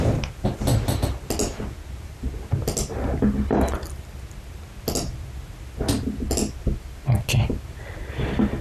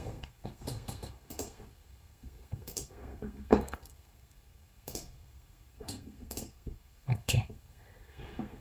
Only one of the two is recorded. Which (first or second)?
first